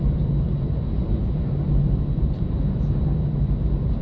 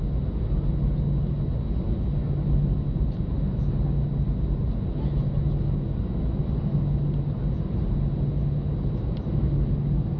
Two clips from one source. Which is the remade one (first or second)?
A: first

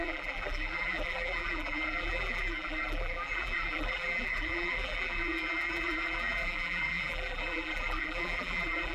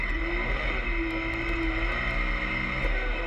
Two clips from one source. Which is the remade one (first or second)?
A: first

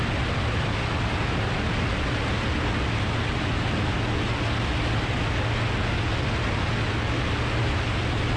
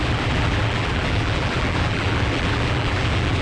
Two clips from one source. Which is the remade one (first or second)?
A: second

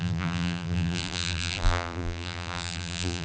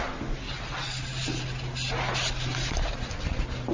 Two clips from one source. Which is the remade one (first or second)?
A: first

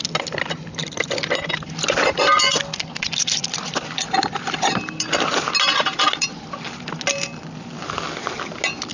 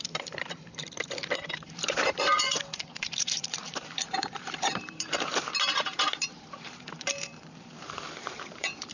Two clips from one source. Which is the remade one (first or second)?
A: second